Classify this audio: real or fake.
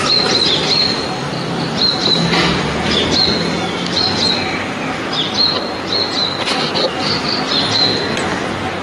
real